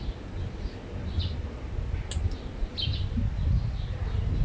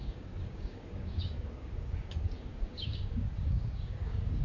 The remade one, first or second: second